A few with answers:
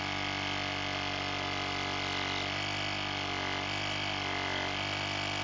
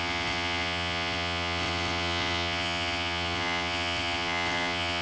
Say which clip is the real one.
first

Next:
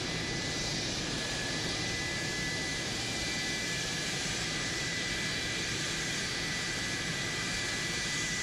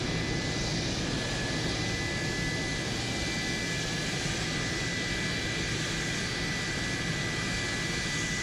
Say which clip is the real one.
second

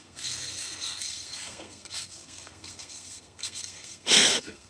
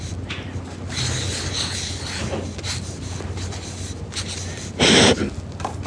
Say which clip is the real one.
second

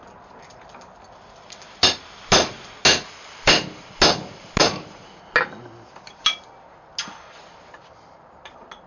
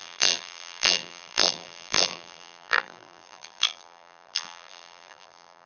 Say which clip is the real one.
first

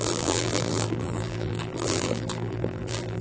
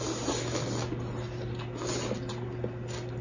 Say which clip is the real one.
second